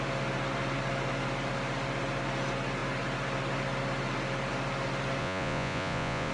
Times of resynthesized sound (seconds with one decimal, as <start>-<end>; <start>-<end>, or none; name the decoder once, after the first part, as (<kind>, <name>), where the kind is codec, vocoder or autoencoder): 5.2-6.3 (vocoder, Vocos)